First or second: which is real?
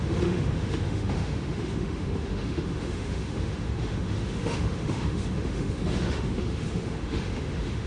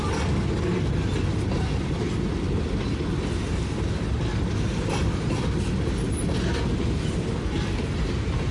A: second